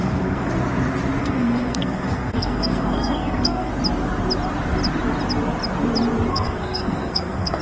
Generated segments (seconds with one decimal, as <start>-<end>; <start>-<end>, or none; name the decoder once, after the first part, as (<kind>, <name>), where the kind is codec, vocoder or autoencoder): 0.0-0.5 (codec, SNAC); 1.2-3.7; 6.3-7.6